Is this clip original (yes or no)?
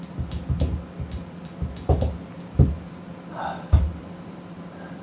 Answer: yes